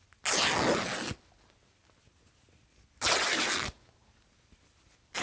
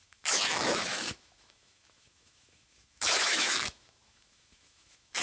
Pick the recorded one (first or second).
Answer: first